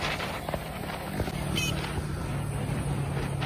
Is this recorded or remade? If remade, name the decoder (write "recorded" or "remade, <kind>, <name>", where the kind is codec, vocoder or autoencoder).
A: recorded